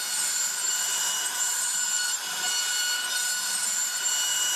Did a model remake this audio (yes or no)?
yes